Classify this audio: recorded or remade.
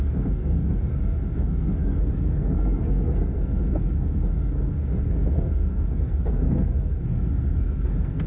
remade